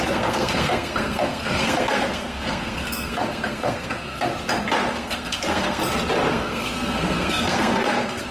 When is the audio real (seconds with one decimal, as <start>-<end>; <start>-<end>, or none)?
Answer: 4.3-4.9; 5.8-6.3